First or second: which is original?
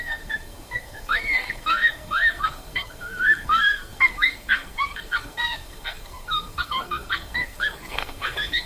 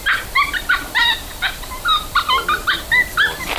second